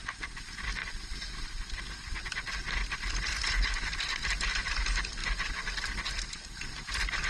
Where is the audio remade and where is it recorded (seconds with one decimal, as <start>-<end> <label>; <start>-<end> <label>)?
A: 0.0-0.8 recorded; 0.8-3.3 remade; 3.3-7.3 recorded